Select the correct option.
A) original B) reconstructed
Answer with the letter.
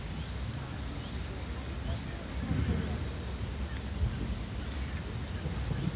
A